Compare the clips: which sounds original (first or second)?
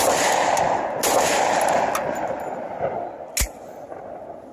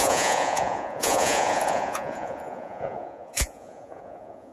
first